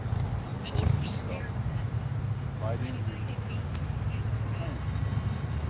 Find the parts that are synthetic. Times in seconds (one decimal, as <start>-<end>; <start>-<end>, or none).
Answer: 0.5-2.2